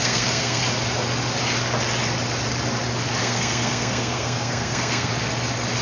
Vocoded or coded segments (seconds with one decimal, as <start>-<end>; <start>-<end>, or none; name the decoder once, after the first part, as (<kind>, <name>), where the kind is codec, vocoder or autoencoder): 0.0-0.6 (codec, SNAC); 3.2-5.1